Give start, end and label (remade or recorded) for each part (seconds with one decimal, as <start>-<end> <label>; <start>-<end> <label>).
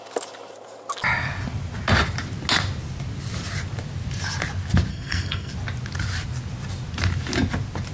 0.0-4.9 recorded; 4.9-5.5 remade; 5.5-7.9 recorded